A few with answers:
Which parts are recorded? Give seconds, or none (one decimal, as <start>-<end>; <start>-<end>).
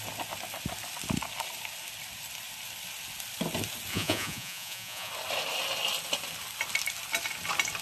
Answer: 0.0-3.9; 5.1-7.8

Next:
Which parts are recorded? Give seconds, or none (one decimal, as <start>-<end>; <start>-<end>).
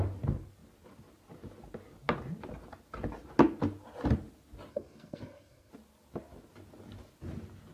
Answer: 0.0-4.7; 5.7-7.7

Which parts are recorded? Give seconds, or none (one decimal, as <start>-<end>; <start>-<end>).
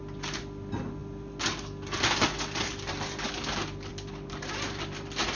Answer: 0.0-5.4